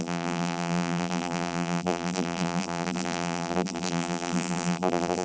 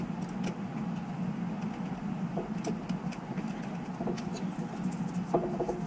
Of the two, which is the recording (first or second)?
second